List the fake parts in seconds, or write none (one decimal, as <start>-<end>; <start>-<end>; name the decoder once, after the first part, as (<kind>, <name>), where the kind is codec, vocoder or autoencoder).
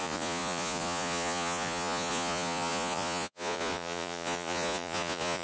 0.0-5.4 (vocoder, Vocos)